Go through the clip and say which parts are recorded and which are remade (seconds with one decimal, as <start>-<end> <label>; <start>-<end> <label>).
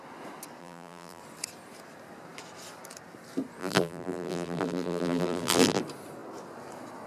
0.0-0.6 recorded; 0.6-1.2 remade; 1.2-3.6 recorded; 3.6-5.8 remade; 5.8-7.1 recorded